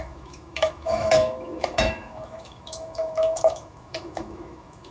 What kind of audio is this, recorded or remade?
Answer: remade